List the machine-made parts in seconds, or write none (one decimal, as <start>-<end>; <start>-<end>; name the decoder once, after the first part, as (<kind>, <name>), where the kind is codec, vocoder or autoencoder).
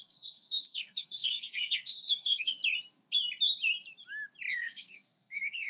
0.0-2.6 (codec, SNAC); 4.5-5.7